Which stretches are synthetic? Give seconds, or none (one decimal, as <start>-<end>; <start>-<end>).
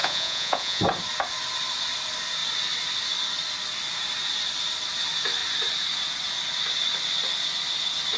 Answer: 0.0-0.8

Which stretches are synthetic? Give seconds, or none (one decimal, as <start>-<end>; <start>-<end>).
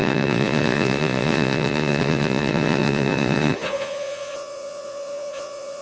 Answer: 0.0-5.8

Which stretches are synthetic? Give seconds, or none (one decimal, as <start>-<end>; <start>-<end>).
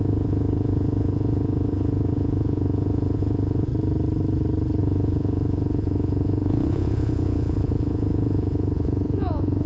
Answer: 0.0-3.7; 4.8-9.7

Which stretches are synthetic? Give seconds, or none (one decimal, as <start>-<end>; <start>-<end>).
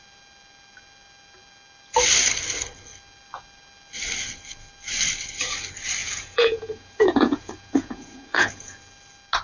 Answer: 6.0-8.8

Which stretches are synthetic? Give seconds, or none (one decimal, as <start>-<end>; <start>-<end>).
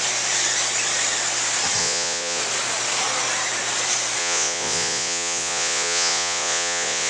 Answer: 1.8-2.4; 4.2-7.1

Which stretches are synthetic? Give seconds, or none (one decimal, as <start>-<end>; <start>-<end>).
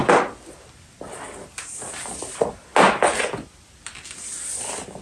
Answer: none